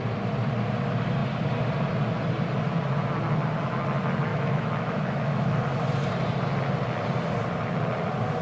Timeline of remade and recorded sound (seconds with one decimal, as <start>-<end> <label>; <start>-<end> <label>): 0.0-4.3 recorded; 4.3-5.6 remade; 5.6-8.4 recorded